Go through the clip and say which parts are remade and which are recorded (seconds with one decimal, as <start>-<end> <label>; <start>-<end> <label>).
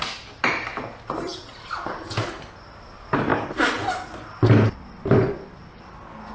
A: 0.0-6.3 recorded